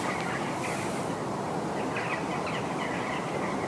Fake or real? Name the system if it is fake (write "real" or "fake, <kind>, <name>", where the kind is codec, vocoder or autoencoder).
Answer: real